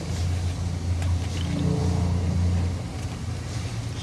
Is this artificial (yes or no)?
no